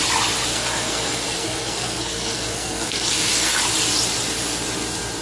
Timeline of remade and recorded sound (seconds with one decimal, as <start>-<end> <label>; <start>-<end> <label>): 0.0-0.5 recorded; 0.5-3.6 remade; 3.6-5.2 recorded